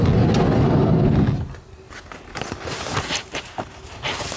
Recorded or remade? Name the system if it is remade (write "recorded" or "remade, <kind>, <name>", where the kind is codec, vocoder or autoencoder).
recorded